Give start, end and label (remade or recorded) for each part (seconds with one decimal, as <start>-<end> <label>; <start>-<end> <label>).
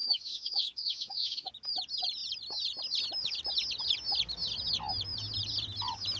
0.0-1.5 remade; 1.5-6.2 recorded